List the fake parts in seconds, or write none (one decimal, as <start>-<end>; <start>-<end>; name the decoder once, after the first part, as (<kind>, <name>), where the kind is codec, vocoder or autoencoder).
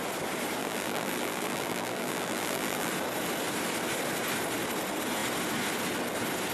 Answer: 0.6-2.9 (vocoder, BigVGAN v2)